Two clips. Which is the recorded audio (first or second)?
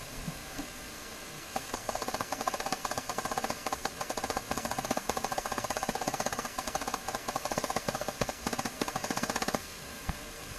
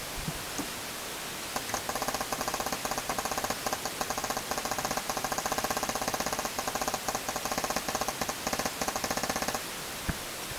second